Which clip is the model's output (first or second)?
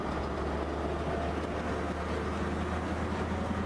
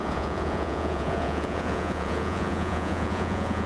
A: second